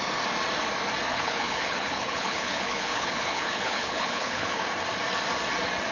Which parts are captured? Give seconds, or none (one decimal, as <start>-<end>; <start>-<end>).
0.0-1.1; 4.6-5.9